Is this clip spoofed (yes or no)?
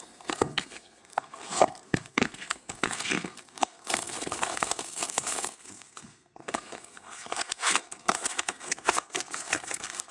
yes